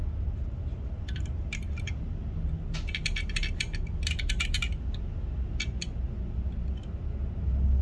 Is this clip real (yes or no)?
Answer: yes